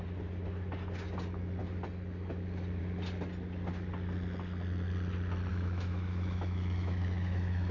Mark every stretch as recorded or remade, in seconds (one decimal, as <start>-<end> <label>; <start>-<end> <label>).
0.0-5.5 recorded; 5.5-7.7 remade